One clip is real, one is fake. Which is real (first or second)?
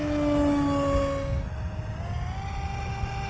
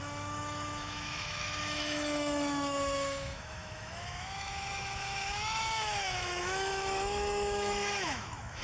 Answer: first